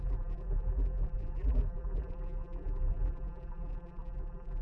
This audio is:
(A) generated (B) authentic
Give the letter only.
A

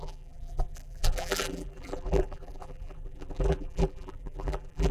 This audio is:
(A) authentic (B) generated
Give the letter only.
B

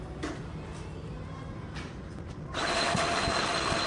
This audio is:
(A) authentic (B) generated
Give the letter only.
A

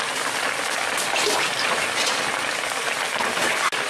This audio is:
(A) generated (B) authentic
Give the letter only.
B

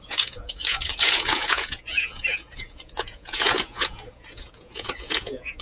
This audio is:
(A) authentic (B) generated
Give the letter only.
B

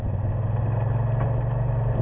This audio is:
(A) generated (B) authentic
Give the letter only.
B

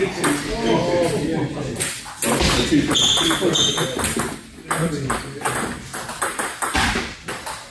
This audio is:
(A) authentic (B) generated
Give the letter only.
A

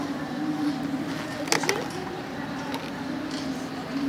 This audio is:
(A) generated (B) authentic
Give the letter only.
B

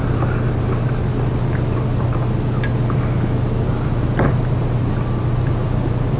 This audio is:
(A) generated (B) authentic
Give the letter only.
B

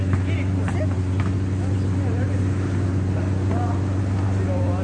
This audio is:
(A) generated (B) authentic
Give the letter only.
B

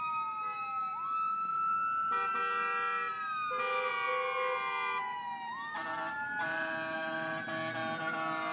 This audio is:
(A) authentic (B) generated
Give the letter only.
A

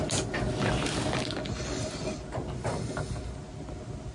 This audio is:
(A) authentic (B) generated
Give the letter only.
A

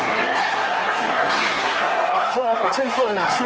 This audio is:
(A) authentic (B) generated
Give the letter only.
B